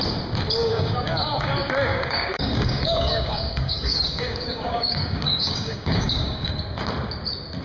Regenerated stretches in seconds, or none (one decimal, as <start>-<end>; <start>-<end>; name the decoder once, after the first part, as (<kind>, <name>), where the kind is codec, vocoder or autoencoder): 0.6-1.5 (codec, DAC); 1.9-6.5